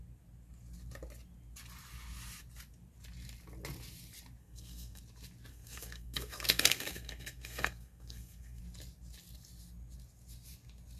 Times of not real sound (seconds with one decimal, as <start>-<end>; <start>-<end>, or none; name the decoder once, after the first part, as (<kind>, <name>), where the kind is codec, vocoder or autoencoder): 4.4-5.0 (codec, SNAC); 5.5-8.6